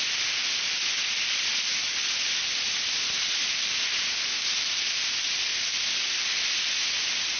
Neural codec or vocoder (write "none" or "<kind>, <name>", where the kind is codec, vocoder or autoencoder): none